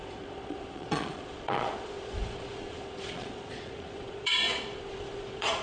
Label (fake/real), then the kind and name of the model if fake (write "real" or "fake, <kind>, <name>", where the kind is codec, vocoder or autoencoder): fake, vocoder, Vocos